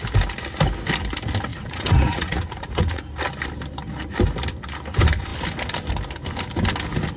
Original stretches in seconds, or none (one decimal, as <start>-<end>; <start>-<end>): 0.0-1.5; 3.0-7.2